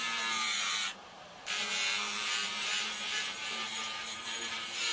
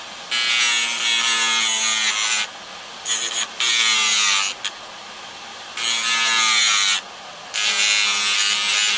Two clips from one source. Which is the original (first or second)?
second